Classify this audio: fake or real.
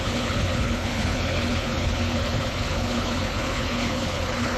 fake